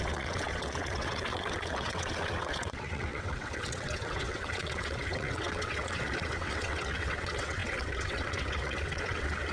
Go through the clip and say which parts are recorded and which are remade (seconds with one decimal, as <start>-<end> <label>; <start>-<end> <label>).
0.0-9.5 remade